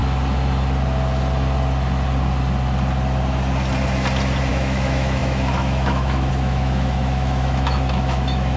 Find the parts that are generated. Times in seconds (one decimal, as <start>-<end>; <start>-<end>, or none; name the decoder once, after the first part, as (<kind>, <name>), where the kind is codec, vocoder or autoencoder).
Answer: 4.5-8.6 (autoencoder, DAC-VAE)